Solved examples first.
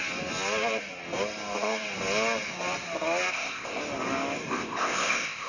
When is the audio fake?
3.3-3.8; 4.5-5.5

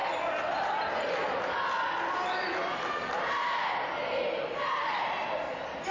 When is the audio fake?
none

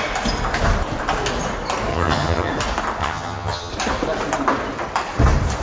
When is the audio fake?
1.9-2.5; 3.0-3.7

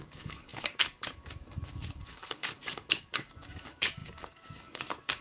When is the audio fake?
0.0-5.2

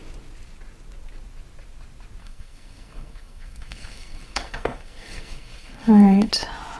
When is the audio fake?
2.2-6.3

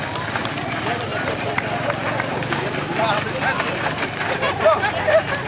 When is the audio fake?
1.1-4.4